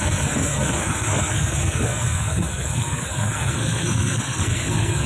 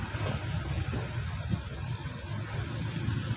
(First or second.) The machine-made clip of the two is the first